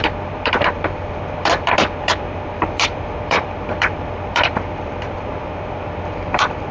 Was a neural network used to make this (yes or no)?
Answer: yes